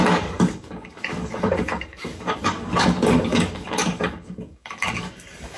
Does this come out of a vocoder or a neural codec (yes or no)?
yes